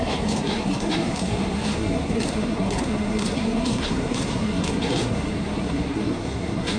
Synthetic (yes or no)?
yes